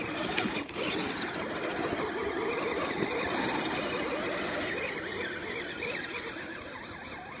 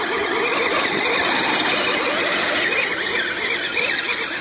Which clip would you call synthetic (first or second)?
first